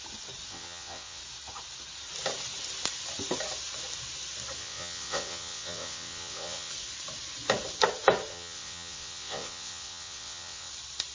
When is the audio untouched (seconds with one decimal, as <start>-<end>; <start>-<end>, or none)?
0.0-0.5; 1.2-4.6; 6.7-8.3; 10.7-11.1